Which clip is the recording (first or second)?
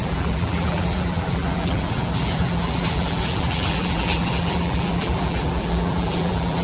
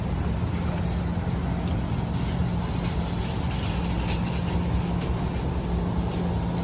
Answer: second